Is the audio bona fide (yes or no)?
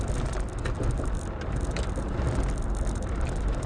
yes